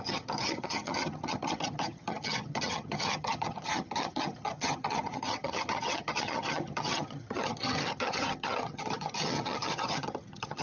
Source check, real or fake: fake